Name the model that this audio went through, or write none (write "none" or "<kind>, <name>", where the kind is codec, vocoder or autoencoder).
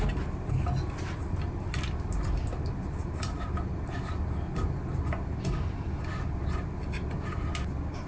none